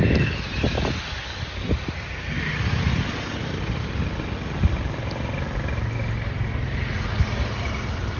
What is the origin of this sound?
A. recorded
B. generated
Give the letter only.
A